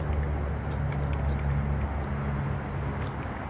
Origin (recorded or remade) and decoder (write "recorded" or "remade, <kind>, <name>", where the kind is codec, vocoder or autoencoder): recorded